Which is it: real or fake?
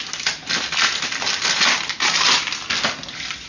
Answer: real